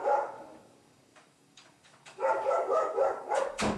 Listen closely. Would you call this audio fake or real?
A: fake